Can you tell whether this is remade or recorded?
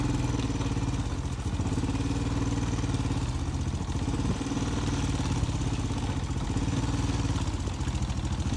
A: recorded